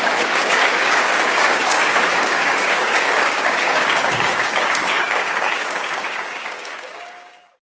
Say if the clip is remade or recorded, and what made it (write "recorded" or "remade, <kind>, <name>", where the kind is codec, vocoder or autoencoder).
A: remade, codec, DAC